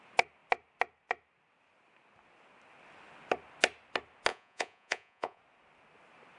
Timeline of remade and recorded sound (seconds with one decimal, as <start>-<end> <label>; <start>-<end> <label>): 0.0-4.3 recorded; 4.3-5.4 remade; 5.4-6.4 recorded